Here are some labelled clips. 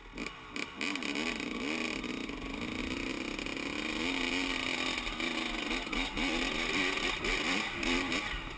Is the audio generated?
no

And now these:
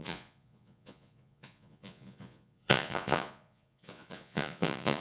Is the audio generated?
yes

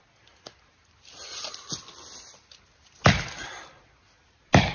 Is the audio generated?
no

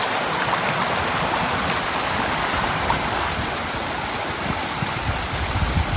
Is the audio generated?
no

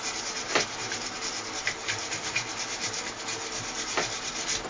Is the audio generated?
no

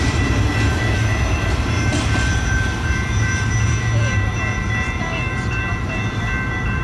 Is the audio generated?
yes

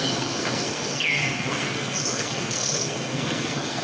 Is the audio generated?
yes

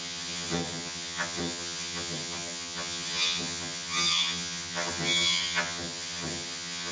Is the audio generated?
yes